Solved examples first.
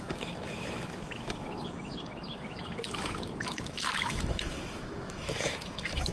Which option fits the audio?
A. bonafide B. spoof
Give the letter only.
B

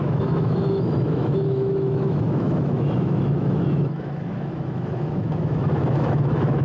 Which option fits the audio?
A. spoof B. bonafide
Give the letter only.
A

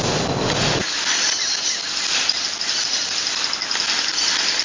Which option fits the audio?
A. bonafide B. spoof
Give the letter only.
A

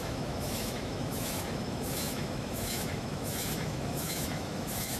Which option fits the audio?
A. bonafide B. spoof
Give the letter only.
B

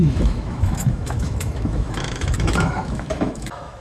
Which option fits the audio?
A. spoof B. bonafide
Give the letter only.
A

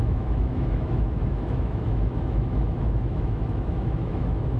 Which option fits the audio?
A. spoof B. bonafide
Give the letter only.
A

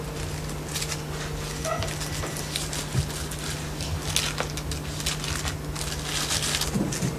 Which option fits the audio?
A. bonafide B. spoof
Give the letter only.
A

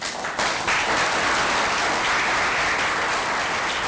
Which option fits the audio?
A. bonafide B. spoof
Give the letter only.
A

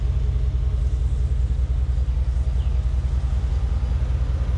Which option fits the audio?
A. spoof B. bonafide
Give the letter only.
B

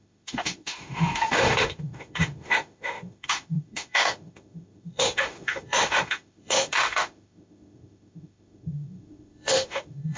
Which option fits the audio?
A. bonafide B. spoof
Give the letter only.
B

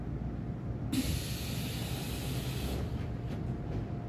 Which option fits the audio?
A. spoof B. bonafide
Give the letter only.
B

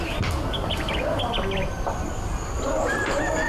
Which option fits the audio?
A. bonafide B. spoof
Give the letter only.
A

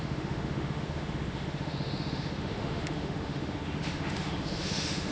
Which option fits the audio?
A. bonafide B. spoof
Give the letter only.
B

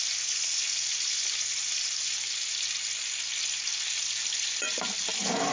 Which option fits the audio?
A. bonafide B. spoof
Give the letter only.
A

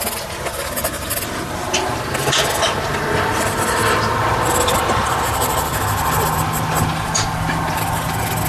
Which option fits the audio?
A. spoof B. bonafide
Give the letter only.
B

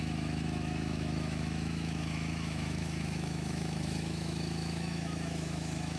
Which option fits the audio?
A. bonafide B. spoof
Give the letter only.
B